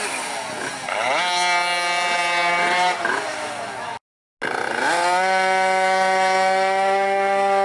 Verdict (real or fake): real